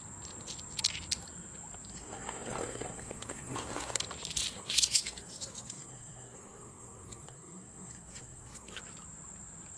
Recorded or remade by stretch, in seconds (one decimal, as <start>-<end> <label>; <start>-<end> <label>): 0.0-1.9 recorded; 1.9-4.0 remade; 4.0-4.5 recorded; 4.5-8.8 remade; 8.8-9.8 recorded